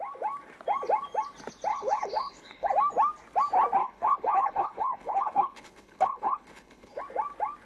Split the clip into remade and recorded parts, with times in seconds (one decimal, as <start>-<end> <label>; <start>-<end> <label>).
0.0-1.7 recorded; 1.7-2.7 remade; 2.7-3.8 recorded; 3.8-7.0 remade; 7.0-7.7 recorded